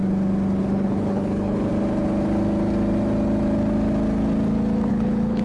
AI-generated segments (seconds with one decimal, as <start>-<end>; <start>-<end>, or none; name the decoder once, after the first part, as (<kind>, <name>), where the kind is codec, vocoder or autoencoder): 0.6-1.7 (codec, HILCodec); 4.9-5.4